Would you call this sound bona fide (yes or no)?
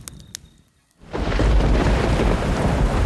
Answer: yes